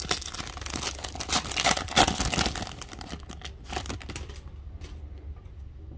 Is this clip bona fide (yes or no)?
yes